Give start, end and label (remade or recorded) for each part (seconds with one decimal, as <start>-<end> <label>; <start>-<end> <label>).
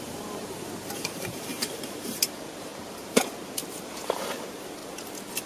0.0-2.7 remade; 2.7-3.9 recorded; 3.9-4.8 remade; 4.8-5.5 recorded